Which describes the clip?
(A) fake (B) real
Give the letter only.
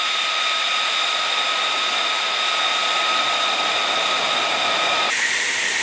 B